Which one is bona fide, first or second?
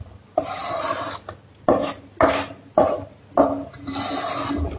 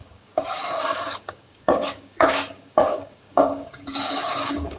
first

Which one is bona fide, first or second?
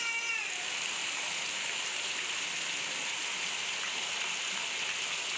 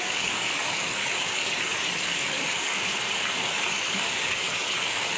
first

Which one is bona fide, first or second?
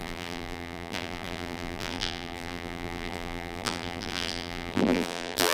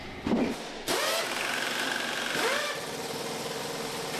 second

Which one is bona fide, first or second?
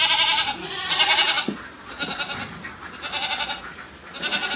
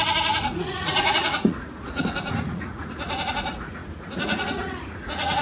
first